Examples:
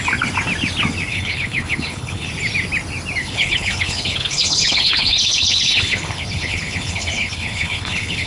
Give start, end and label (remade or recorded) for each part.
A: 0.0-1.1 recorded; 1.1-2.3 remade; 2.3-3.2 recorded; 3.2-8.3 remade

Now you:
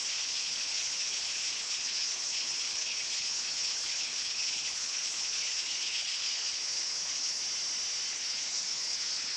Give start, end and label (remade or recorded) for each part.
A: 0.0-7.4 remade; 7.4-8.1 recorded; 8.1-9.4 remade

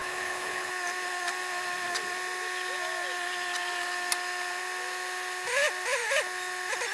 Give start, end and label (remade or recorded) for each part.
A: 0.0-0.7 remade; 0.7-6.9 recorded

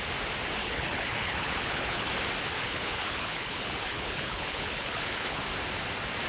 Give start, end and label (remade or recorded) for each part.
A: 0.0-0.6 recorded; 0.6-2.1 remade; 2.1-2.6 recorded; 2.6-5.4 remade; 5.4-6.3 recorded

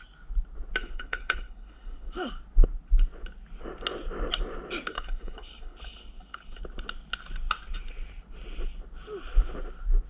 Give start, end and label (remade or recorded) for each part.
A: 0.0-0.8 recorded; 0.8-2.3 remade; 2.3-4.9 recorded; 4.9-6.6 remade; 6.6-10.1 recorded

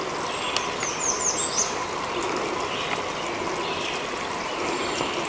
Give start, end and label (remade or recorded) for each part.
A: 0.0-5.3 recorded

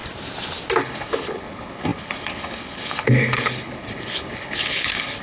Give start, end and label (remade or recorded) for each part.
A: 0.0-0.8 recorded; 0.8-5.2 remade

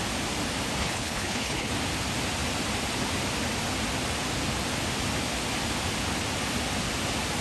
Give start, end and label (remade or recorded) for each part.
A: 0.0-0.8 recorded; 0.8-1.7 remade; 1.7-7.4 recorded